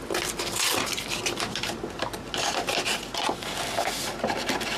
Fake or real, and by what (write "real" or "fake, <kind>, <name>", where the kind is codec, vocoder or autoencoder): real